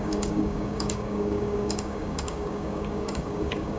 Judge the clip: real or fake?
fake